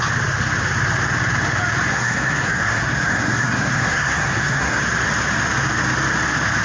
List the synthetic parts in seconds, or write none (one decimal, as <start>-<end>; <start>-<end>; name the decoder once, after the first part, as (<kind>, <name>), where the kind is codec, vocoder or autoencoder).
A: 1.9-4.8 (codec, SNAC)